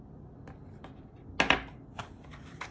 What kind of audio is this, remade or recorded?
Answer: recorded